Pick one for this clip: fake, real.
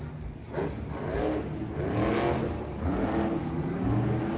real